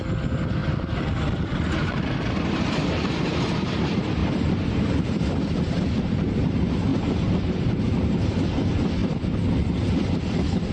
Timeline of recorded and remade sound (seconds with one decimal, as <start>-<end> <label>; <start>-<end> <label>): 0.0-6.9 remade; 6.9-7.5 recorded; 7.5-10.7 remade